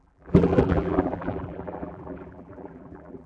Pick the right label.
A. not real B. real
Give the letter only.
A